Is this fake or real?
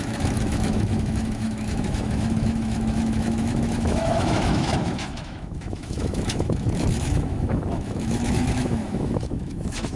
fake